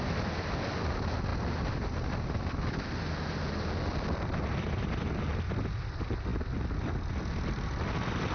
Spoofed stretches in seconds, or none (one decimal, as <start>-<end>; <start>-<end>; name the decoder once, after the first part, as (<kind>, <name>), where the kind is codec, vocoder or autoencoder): none